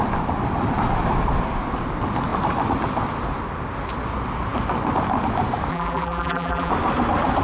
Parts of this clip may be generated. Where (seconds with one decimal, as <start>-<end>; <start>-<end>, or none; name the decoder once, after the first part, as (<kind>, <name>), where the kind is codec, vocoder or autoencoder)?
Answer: 5.7-6.7 (vocoder, BigVGAN v2)

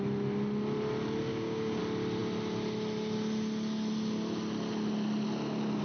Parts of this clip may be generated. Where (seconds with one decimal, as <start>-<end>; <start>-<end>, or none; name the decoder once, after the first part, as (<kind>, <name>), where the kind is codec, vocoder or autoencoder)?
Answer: 1.3-1.8 (codec, DAC)

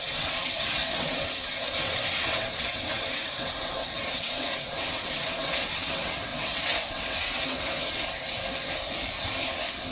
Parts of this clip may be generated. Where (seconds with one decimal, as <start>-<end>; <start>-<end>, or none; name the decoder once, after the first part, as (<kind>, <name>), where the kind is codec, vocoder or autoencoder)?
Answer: 0.0-8.4 (vocoder, WaveNeXt)

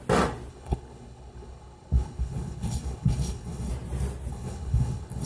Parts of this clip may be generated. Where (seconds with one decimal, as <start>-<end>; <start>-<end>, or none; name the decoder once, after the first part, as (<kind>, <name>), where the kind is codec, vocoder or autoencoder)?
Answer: 0.5-3.7 (codec, HILCodec); 4.3-5.3

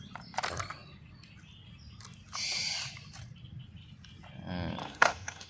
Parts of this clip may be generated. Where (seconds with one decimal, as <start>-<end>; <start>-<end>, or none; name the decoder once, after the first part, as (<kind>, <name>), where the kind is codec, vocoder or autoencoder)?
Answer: 4.8-5.5 (autoencoder, DAC-VAE)

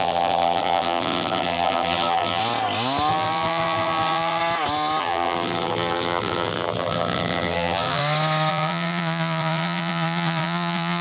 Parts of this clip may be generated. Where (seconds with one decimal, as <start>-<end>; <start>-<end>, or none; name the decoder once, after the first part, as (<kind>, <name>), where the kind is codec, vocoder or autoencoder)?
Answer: 0.0-2.4 (vocoder, BigVGAN v2); 3.1-4.4; 5.0-8.0; 8.5-11.0

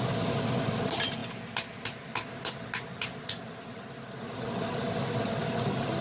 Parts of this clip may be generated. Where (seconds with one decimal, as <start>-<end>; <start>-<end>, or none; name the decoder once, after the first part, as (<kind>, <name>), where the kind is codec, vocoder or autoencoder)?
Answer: none